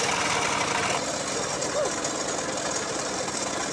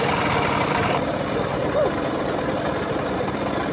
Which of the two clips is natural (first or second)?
first